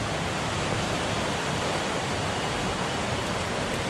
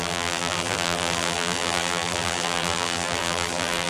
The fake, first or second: second